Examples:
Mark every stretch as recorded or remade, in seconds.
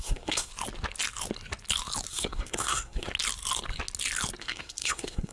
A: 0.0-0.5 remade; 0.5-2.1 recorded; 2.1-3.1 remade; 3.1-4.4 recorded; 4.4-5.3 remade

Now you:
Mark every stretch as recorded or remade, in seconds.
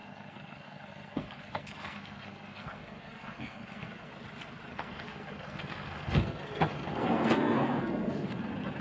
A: 0.0-4.1 remade; 4.1-4.7 recorded; 4.7-8.4 remade; 8.4-8.8 recorded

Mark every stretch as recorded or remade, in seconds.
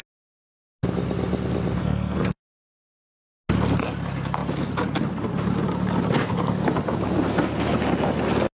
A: 0.0-1.8 recorded; 1.8-2.4 remade; 2.4-8.6 recorded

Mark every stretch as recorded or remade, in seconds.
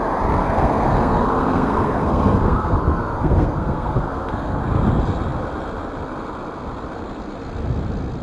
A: 0.0-0.4 recorded; 0.4-4.6 remade; 4.6-8.2 recorded